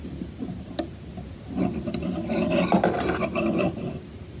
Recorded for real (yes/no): yes